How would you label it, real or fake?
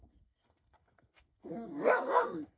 fake